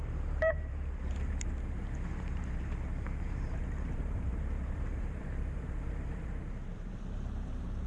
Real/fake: fake